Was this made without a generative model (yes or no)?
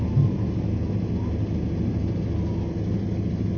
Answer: yes